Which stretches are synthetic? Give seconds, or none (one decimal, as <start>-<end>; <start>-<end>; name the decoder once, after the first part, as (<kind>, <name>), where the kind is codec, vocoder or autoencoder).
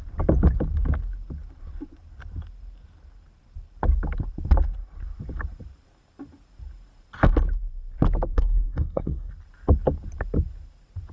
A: 8.3-9.3 (codec, SNAC)